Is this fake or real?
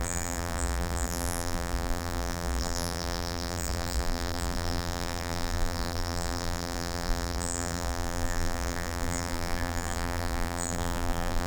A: fake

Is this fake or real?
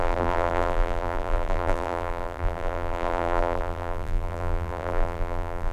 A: fake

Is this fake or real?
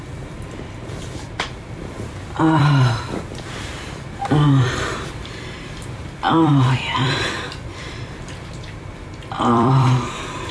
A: fake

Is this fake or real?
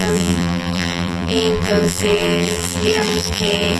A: fake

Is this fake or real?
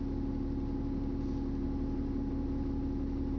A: real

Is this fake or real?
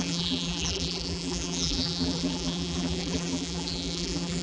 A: fake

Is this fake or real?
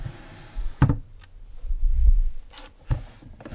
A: real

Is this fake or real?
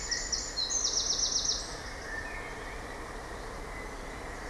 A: real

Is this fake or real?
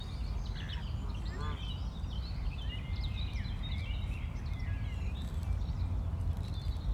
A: real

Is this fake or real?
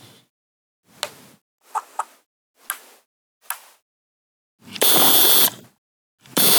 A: real